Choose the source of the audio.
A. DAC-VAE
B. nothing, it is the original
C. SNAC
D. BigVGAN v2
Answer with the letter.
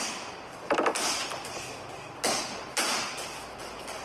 B